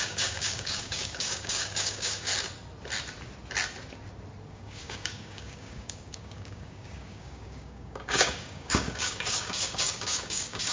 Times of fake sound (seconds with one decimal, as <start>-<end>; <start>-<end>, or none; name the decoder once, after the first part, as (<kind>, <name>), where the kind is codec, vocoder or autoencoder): 0.0-2.3 (codec, DAC); 4.5-10.7